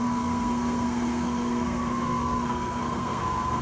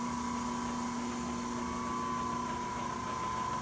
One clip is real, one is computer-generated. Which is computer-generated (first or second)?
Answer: first